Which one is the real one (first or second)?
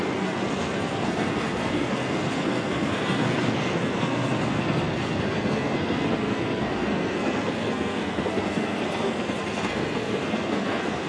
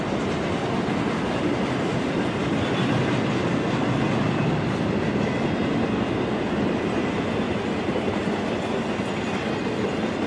second